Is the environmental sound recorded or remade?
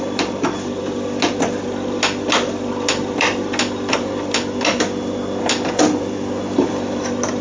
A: recorded